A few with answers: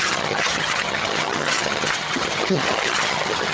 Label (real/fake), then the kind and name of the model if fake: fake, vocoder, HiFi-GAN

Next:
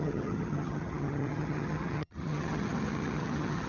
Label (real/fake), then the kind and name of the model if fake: fake, vocoder, HiFi-GAN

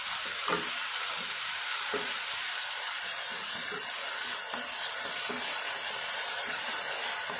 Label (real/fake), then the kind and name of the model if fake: real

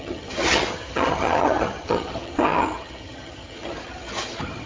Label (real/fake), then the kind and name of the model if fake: fake, vocoder, HiFi-GAN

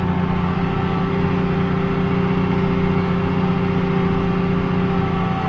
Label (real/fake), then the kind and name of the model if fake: real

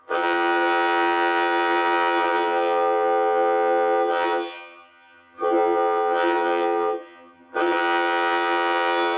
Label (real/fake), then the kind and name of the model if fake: fake, vocoder, HiFi-GAN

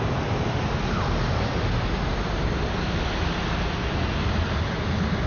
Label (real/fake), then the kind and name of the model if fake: real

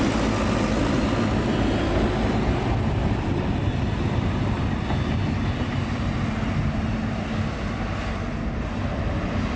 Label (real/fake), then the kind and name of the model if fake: real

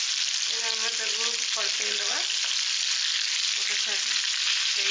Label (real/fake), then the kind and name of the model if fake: real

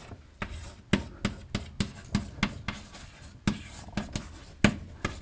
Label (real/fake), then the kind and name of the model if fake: real